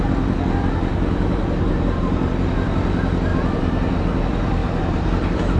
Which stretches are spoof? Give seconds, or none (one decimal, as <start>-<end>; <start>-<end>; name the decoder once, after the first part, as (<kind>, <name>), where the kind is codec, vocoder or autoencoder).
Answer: 0.9-2.3 (vocoder, BigVGAN v2); 3.3-4.0; 4.6-5.6